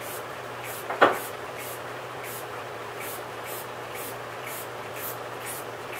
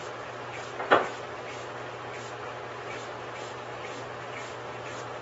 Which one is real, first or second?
second